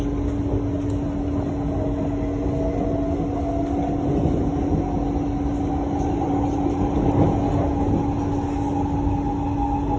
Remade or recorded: recorded